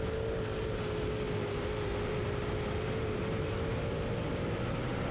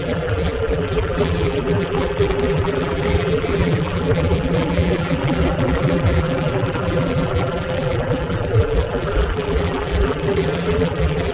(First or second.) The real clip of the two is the first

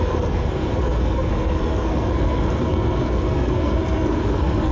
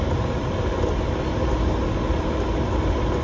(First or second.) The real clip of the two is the second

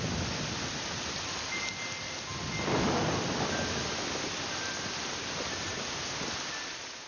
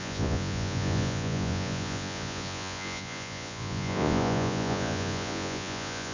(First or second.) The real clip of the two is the first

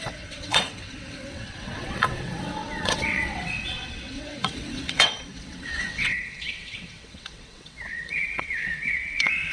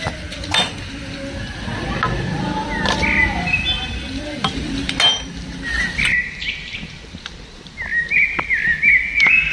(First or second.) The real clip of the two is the second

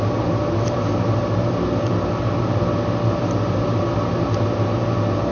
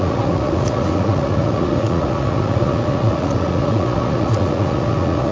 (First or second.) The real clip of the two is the first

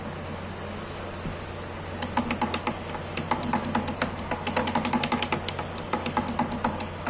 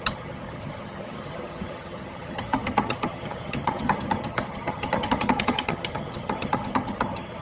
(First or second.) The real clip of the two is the first